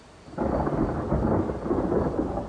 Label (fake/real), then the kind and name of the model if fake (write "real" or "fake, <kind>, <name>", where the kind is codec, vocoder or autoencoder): real